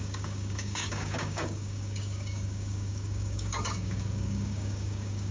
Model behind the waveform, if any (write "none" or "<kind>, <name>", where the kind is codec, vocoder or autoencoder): codec, DAC